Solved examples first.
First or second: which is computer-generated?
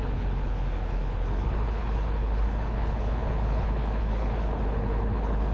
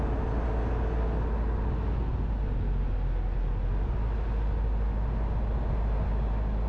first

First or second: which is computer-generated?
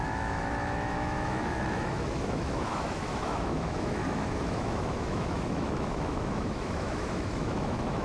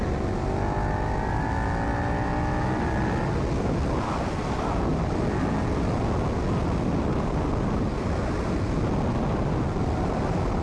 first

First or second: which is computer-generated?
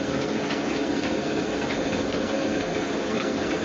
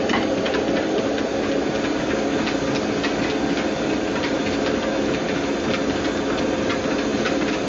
first